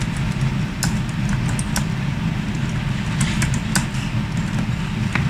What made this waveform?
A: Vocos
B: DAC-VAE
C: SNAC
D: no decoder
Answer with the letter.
D